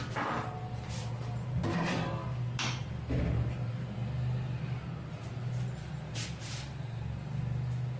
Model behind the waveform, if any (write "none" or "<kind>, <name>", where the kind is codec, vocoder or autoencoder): none